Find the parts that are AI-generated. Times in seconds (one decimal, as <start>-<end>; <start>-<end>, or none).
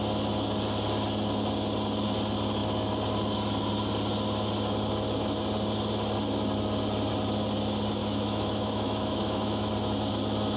8.0-9.7